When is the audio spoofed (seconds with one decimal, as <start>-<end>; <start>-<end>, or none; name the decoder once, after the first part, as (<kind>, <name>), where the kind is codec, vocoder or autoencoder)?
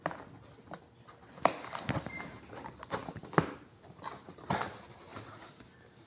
none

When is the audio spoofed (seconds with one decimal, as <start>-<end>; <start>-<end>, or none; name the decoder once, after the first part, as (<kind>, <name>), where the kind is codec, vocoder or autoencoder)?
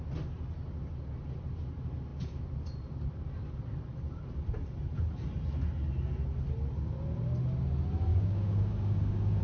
8.1-9.4 (codec, DAC)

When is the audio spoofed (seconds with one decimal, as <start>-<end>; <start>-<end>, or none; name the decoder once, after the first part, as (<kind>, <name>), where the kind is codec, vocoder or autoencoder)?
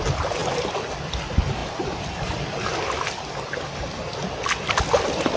none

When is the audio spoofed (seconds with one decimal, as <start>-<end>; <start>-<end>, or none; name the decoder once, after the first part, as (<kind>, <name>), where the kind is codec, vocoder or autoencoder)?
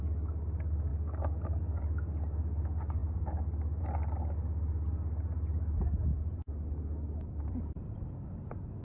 0.9-1.8 (codec, DAC)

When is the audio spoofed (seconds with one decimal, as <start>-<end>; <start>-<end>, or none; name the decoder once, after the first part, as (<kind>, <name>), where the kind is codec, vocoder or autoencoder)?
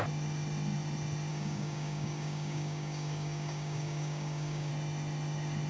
1.3-4.7 (codec, DAC)